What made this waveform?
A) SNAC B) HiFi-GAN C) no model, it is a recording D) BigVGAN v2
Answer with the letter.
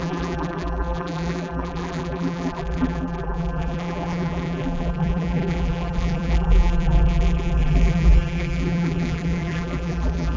D